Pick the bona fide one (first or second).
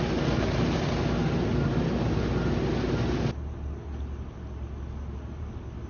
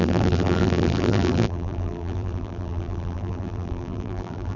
first